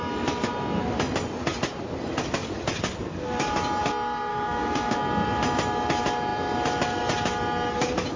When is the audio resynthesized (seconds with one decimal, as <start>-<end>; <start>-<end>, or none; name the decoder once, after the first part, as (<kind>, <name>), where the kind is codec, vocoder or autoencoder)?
4.3-5.0 (codec, DAC)